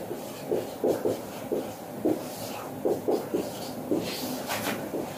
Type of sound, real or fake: real